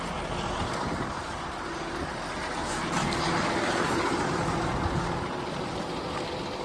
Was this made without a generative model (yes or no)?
yes